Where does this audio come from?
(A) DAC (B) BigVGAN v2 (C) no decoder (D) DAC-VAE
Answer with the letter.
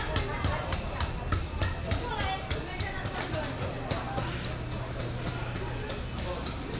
C